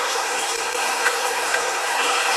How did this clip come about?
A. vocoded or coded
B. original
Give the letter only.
A